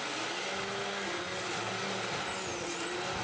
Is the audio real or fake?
real